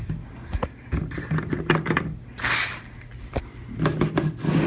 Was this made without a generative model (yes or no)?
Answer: yes